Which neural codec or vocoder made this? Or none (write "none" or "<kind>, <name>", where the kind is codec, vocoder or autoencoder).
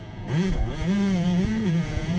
vocoder, Vocos